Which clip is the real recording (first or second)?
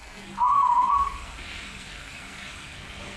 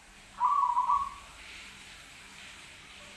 second